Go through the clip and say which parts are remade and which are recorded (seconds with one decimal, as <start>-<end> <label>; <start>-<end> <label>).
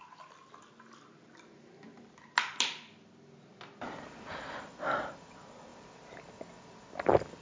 0.0-7.4 recorded